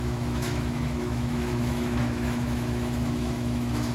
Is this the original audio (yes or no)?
no